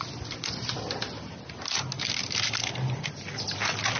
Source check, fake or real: real